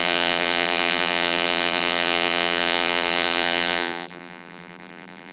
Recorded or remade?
remade